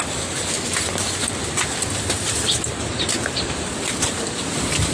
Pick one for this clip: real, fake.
real